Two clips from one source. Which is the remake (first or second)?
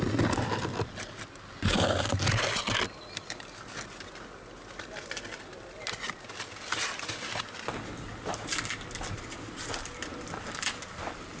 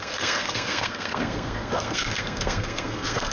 second